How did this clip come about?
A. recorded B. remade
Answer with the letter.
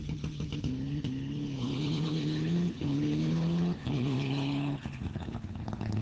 B